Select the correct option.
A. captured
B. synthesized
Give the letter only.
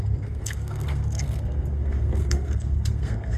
B